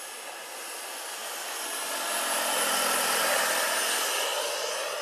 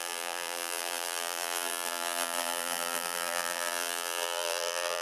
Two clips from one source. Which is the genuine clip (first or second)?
first